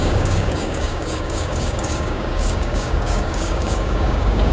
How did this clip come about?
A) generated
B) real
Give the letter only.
A